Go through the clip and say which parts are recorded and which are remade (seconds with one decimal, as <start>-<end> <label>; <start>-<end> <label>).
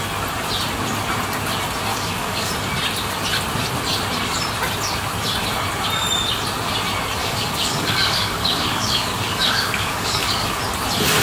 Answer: 0.0-1.9 recorded; 1.9-2.5 remade; 2.5-7.2 recorded; 7.2-10.6 remade; 10.6-11.2 recorded